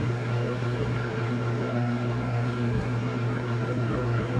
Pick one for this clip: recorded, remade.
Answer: remade